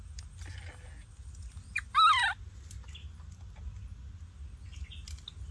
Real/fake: real